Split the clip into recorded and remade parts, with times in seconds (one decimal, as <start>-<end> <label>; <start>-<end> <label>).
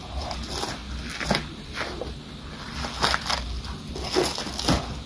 0.0-5.1 recorded